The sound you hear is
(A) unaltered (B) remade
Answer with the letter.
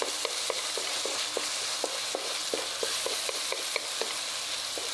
A